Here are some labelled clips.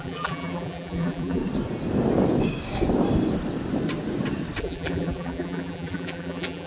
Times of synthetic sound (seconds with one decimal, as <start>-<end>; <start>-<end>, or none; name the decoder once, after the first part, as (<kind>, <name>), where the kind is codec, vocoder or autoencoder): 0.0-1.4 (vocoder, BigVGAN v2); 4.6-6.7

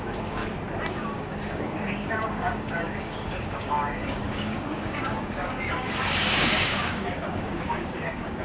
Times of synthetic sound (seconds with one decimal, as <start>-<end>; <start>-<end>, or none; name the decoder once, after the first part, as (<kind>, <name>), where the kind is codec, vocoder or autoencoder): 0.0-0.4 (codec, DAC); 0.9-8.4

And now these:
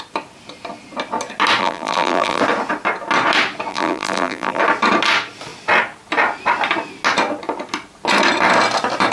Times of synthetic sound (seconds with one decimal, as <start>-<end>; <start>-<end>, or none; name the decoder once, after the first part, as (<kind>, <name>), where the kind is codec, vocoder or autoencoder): 1.6-2.4 (vocoder, BigVGAN v2); 3.7-4.6

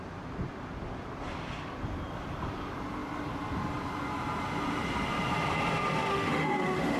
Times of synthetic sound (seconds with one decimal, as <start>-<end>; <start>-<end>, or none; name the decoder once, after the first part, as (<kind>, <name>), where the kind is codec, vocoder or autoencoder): 6.1-7.0 (autoencoder, DAC-VAE)

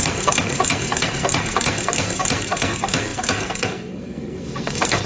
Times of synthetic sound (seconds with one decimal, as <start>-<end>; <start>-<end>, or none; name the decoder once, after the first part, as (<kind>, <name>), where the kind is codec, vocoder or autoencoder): 0.0-5.1 (codec, SNAC)

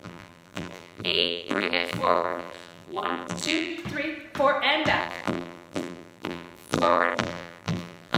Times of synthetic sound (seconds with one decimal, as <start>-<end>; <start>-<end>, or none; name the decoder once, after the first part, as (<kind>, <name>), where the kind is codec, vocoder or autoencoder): 0.0-3.7 (vocoder, BigVGAN v2); 5.0-8.2

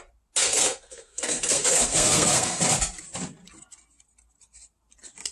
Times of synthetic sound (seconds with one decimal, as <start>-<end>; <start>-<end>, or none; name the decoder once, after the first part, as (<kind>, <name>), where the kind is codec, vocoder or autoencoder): 0.4-2.6 (codec, SNAC)